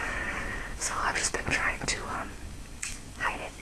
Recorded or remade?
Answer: remade